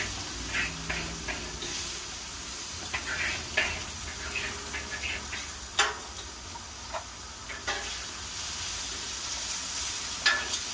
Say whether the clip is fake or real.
real